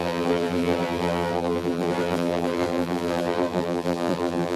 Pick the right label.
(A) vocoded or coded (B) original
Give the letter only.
A